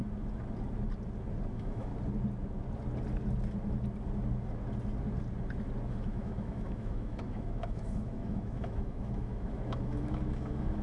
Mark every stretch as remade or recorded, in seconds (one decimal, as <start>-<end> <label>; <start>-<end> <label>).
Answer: 0.0-1.5 recorded; 1.5-1.9 remade; 1.9-5.9 recorded; 5.9-10.8 remade